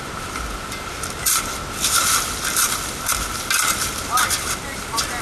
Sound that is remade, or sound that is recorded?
recorded